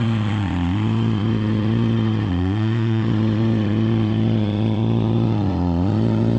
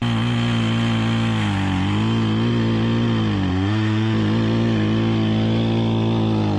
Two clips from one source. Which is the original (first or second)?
second